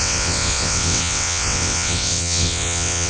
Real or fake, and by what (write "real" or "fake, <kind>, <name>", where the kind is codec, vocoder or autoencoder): fake, vocoder, WaveNeXt